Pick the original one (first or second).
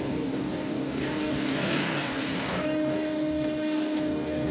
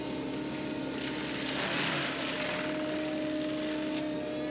second